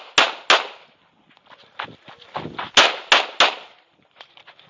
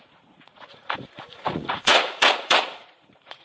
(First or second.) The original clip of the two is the first